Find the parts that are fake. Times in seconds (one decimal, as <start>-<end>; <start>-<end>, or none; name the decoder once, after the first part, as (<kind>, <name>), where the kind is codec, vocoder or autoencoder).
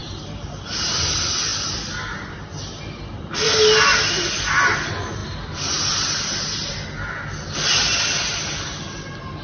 none